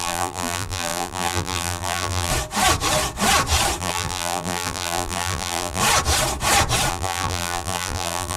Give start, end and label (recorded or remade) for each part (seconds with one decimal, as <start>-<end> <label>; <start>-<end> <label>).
0.0-2.3 remade; 2.3-3.8 recorded; 3.8-5.8 remade; 5.8-6.9 recorded; 6.9-8.4 remade